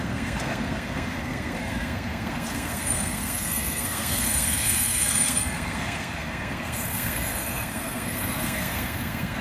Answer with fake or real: fake